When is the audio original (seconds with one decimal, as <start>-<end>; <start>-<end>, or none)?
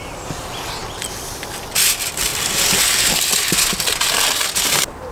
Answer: 0.0-5.1